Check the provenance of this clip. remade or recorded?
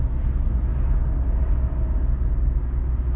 recorded